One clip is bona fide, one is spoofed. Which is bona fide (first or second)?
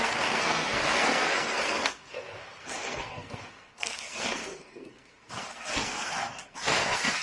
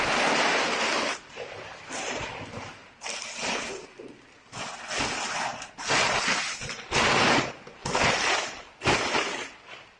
second